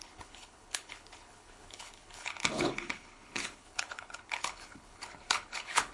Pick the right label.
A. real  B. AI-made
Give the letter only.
B